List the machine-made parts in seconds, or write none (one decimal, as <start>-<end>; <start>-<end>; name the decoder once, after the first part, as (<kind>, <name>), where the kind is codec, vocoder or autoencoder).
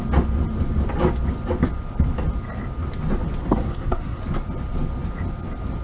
3.4-4.2 (codec, SNAC)